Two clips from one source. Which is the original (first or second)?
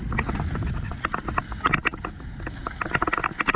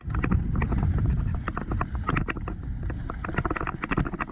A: first